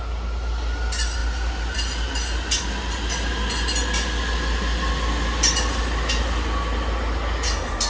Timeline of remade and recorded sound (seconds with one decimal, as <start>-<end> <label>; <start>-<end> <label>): 0.0-7.9 recorded